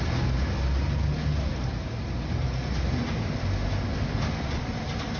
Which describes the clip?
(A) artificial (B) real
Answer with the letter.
B